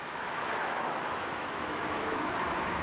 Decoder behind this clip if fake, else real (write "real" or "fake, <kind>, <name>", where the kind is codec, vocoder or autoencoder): fake, autoencoder, DAC-VAE